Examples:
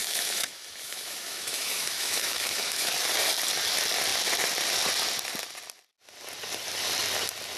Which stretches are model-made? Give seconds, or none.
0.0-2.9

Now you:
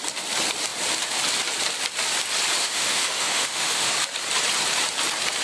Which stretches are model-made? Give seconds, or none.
2.6-3.9

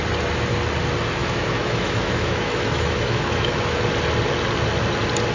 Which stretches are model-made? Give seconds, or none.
1.2-3.8

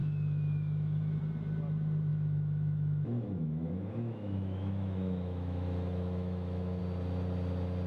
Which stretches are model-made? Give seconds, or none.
0.0-1.2; 2.1-6.8

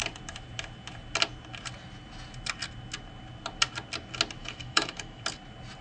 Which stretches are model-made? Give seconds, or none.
4.4-5.2

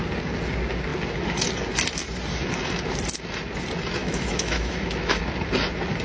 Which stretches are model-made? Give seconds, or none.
4.0-5.2